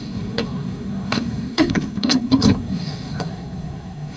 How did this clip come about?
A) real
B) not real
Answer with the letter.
B